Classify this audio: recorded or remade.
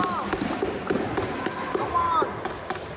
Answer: recorded